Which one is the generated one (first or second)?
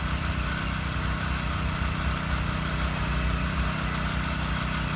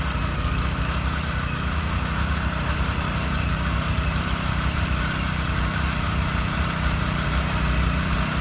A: second